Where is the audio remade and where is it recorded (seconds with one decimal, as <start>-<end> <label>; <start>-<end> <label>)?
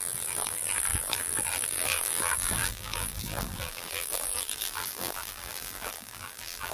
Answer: 0.0-6.7 remade